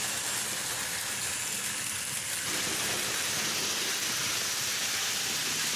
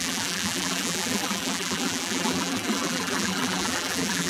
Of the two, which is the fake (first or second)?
second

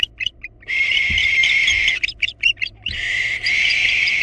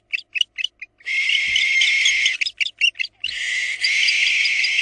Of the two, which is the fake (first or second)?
first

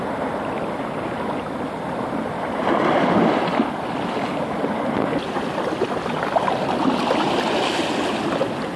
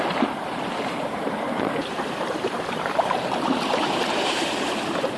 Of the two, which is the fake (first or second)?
second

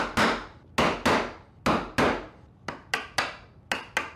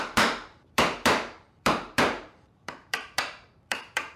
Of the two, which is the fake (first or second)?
second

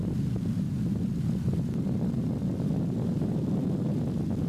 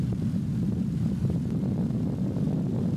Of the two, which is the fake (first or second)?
second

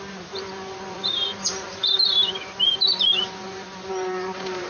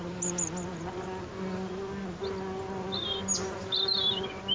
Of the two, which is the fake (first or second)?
first